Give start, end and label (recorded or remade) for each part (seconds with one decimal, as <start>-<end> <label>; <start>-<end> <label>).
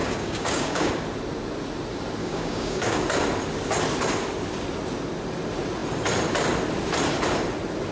0.0-0.9 remade; 0.9-2.2 recorded; 2.2-3.0 remade; 3.0-7.9 recorded